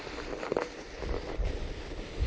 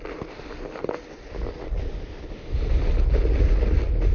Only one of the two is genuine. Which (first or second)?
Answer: second